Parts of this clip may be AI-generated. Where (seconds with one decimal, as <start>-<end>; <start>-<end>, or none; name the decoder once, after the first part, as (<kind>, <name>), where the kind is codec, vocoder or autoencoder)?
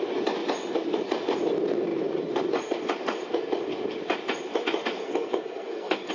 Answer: 5.0-6.1 (codec, SNAC)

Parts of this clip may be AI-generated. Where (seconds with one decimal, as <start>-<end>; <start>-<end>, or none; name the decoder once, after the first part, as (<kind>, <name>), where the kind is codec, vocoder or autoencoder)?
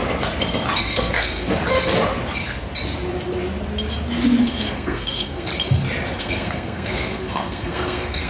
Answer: 0.8-1.6 (codec, SNAC); 4.4-5.5; 6.2-8.3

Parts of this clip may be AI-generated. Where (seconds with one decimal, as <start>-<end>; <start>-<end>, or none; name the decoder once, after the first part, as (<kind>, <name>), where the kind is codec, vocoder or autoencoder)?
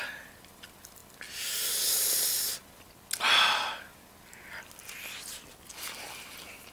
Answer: none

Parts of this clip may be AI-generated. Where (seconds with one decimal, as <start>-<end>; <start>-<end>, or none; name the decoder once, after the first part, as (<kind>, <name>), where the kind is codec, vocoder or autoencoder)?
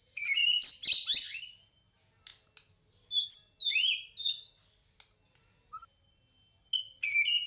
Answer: none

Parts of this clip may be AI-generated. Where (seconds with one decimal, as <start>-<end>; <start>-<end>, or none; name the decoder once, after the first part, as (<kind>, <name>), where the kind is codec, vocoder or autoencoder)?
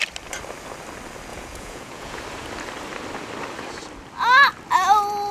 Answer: 1.3-2.2 (vocoder, Vocos)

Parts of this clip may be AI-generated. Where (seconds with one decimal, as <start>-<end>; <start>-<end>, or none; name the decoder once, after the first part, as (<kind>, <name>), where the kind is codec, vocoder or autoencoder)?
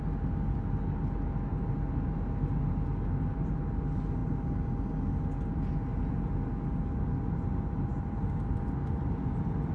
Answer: 7.9-8.6 (vocoder, BigVGAN v2)